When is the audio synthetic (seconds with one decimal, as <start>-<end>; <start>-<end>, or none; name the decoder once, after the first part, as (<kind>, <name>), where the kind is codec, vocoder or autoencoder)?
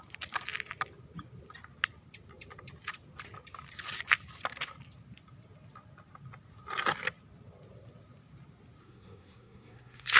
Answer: 8.8-10.2 (codec, SNAC)